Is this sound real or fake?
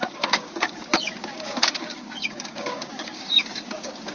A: fake